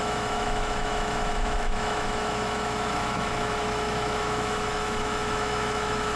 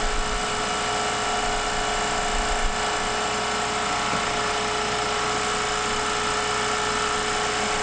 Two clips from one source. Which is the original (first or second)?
second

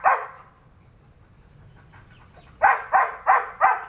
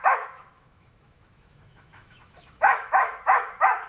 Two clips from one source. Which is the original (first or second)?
first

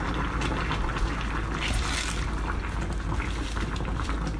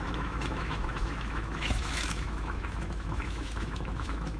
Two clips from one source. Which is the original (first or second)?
first